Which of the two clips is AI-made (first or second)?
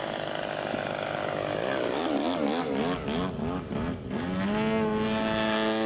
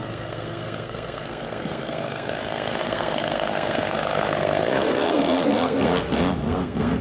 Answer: second